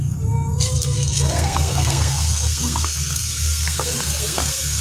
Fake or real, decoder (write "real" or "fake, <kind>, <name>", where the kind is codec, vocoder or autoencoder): fake, codec, SNAC